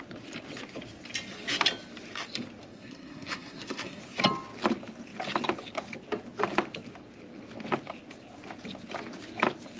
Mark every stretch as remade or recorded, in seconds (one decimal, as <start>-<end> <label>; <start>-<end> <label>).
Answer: 0.0-2.7 recorded; 2.7-4.0 remade; 4.0-9.8 recorded